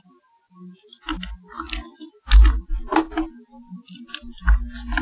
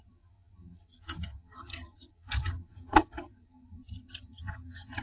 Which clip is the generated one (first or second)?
second